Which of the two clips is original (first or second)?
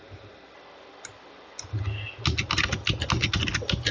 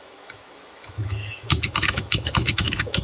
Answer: first